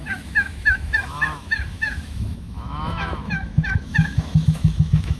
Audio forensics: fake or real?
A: fake